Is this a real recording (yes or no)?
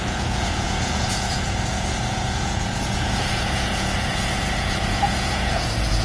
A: no